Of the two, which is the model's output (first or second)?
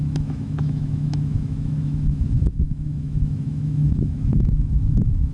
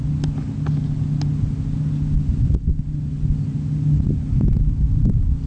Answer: first